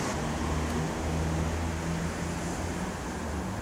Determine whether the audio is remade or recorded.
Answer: recorded